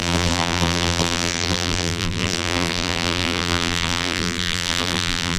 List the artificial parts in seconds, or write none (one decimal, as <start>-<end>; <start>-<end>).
0.0-5.4